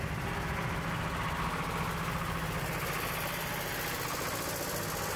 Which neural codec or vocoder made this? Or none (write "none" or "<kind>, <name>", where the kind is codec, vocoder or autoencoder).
none